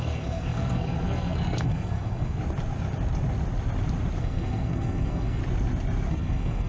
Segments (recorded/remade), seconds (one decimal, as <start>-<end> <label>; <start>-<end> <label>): 0.0-2.4 remade; 2.4-4.2 recorded; 4.2-5.4 remade; 5.4-6.1 recorded; 6.1-6.7 remade